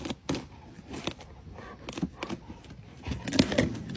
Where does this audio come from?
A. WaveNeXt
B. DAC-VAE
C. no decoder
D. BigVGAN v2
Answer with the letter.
C